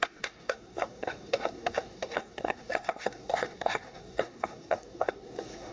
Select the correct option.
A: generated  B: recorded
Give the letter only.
A